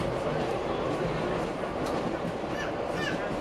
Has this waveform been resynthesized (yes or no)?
yes